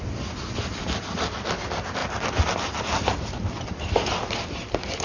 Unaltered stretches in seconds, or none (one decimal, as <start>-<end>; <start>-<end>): 0.0-5.0